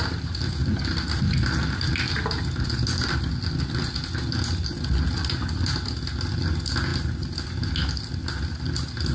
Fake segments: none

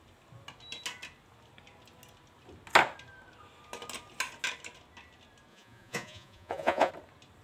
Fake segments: 5.5-6.9